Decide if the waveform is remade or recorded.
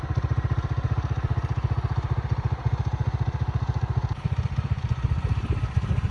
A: remade